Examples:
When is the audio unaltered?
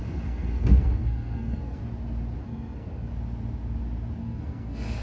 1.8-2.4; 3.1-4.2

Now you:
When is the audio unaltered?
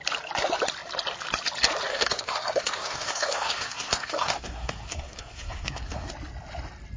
0.0-1.9; 6.1-7.0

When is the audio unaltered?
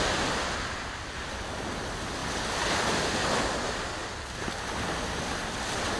0.0-6.0